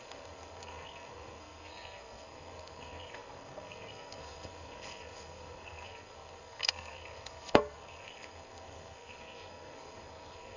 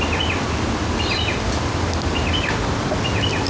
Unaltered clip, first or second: second